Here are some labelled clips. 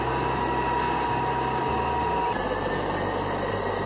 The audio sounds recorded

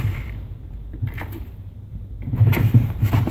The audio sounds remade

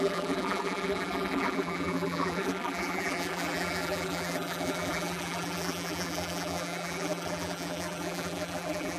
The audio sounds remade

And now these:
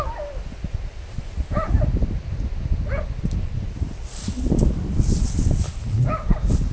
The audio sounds recorded